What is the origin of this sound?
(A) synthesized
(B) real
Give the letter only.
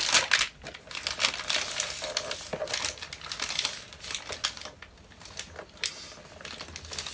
B